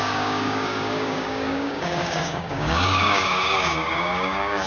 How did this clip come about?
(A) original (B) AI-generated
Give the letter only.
B